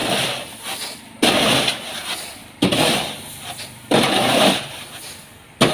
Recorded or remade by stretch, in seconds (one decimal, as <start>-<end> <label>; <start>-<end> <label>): 0.0-0.5 remade; 0.5-2.4 recorded; 2.4-4.1 remade; 4.1-5.7 recorded